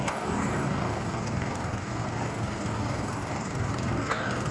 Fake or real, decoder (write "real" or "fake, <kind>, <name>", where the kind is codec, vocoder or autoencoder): fake, codec, DAC